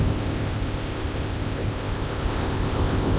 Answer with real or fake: fake